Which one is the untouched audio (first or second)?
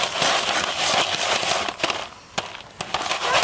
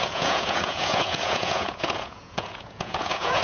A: first